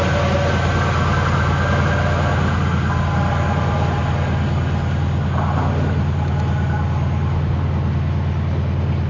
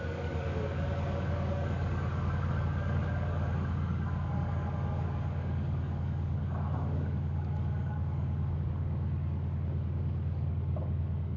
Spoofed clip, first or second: second